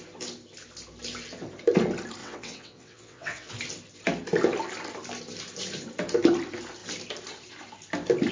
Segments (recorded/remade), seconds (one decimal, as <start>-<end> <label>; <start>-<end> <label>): 0.0-2.2 recorded; 2.2-3.5 remade; 3.5-8.3 recorded